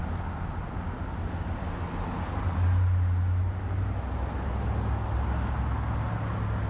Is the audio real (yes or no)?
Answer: yes